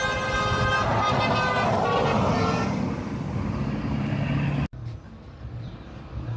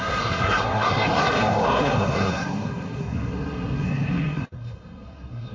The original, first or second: first